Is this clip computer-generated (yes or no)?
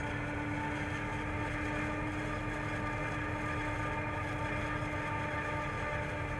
no